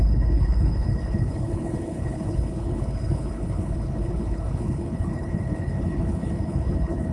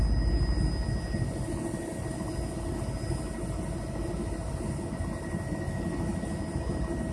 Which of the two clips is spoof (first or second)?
first